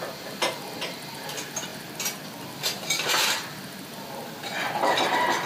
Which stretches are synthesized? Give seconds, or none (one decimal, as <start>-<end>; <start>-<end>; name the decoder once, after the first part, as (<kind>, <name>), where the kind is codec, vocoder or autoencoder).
none